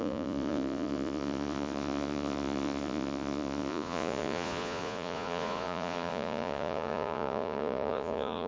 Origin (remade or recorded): remade